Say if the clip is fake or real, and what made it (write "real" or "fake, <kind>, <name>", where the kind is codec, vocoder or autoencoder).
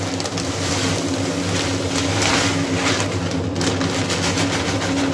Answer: real